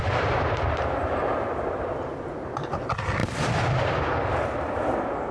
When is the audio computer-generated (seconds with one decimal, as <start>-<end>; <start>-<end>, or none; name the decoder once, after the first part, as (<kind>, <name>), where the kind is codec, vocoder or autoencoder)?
none